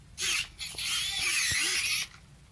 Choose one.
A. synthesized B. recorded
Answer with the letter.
B